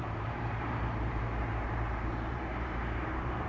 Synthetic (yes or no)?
yes